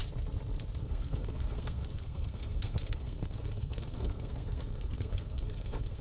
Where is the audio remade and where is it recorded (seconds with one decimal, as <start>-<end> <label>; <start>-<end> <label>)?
0.0-0.8 recorded; 0.8-6.0 remade